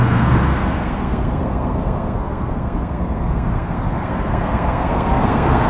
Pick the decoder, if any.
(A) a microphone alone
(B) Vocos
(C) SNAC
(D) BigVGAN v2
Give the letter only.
C